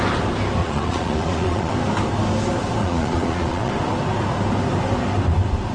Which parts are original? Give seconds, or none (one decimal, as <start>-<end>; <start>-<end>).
0.0-0.6; 1.7-2.8; 3.7-5.7